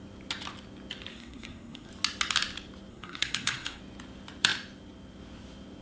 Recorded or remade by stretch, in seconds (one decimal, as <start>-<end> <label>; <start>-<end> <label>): 0.0-1.1 recorded; 1.1-1.9 remade; 1.9-2.9 recorded; 2.9-3.8 remade; 3.8-5.8 recorded